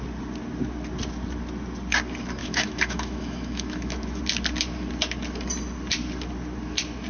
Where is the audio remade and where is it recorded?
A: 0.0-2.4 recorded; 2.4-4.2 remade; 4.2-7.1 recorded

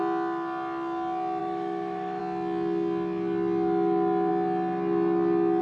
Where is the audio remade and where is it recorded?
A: 0.0-1.4 recorded; 1.4-2.2 remade; 2.2-5.6 recorded

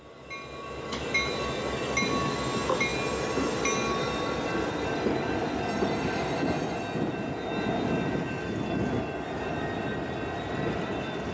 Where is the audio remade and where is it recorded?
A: 0.0-11.3 recorded